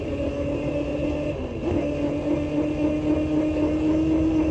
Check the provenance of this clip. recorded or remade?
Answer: recorded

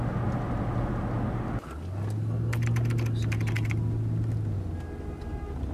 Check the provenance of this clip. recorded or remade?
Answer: recorded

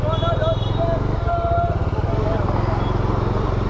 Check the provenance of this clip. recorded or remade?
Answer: recorded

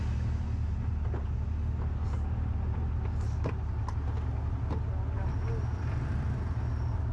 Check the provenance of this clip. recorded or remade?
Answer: recorded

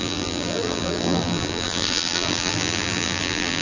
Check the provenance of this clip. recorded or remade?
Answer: remade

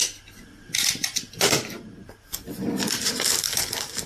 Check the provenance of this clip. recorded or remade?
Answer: recorded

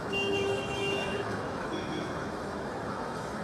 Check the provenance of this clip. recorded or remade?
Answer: remade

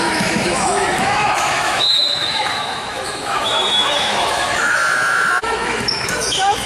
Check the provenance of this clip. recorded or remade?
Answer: remade